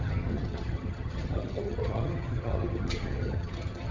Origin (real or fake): fake